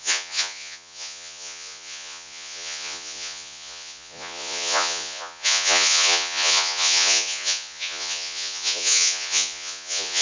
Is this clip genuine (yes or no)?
no